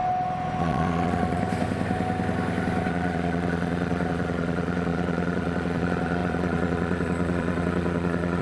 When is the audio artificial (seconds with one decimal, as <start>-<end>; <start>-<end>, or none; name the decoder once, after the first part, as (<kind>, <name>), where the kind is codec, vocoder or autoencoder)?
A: 0.6-1.4 (vocoder, Vocos); 2.9-8.4